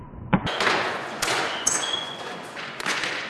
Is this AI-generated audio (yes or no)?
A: yes